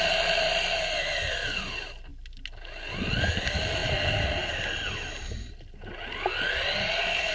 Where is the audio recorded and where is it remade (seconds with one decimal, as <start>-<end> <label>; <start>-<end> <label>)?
0.0-7.3 recorded